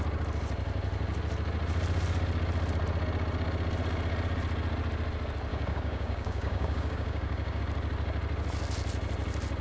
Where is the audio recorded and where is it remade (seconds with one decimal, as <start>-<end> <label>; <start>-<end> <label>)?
0.0-5.5 recorded; 5.5-7.6 remade; 7.6-9.6 recorded